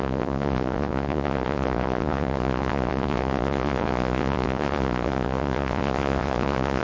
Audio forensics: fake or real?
fake